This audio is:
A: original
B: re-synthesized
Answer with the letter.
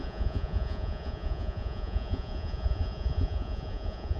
B